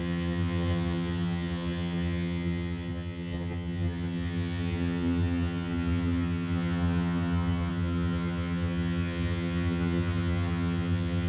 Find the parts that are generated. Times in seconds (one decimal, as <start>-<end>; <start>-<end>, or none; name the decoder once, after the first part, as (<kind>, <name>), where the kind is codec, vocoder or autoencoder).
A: 0.0-11.3 (vocoder, HiFi-GAN)